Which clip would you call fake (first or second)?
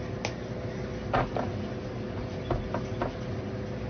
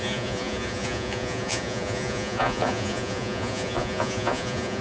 second